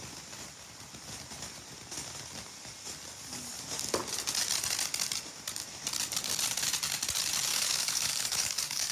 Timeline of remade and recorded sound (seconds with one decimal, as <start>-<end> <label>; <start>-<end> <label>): 0.0-7.5 recorded; 7.5-8.9 remade